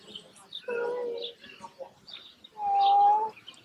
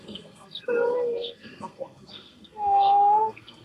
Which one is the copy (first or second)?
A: second